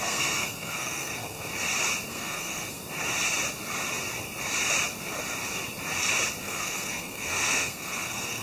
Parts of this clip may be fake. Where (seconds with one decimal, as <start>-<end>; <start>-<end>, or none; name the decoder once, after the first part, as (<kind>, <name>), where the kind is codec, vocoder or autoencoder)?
0.0-1.5 (codec, SNAC); 2.1-2.8; 6.4-8.4